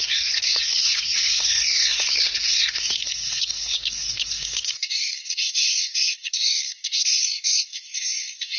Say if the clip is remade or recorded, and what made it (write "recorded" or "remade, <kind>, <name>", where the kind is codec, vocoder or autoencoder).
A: remade, codec, SNAC